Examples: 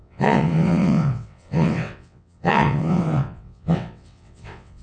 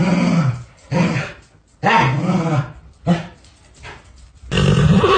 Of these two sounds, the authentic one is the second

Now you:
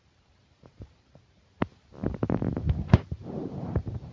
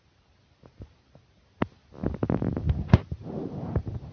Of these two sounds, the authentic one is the second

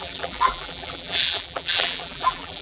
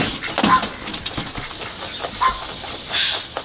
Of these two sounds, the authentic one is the second